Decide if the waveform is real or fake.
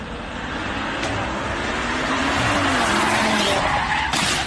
real